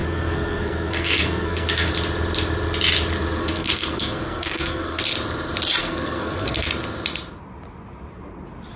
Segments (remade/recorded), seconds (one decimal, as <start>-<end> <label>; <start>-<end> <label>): 0.0-1.9 remade; 1.9-3.4 recorded; 3.4-5.0 remade; 5.0-5.8 recorded; 5.8-6.7 remade; 6.7-8.8 recorded